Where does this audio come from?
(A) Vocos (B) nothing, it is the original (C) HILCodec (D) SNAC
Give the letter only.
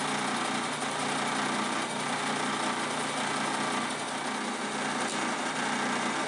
B